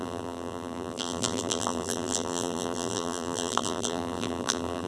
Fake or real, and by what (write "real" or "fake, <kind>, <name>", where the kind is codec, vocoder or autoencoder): fake, vocoder, BigVGAN v2